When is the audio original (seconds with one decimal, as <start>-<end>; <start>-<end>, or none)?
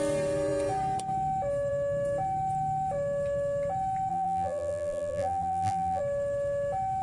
0.0-4.1; 6.0-7.0